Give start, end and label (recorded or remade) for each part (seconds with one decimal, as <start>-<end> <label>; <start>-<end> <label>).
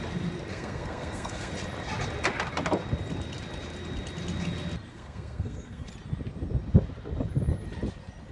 0.0-0.5 recorded; 0.5-1.5 remade; 1.5-4.9 recorded; 4.9-5.9 remade; 5.9-8.3 recorded